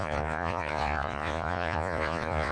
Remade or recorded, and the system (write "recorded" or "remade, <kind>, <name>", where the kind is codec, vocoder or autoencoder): remade, vocoder, Vocos